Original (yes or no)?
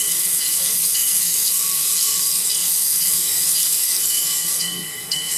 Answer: no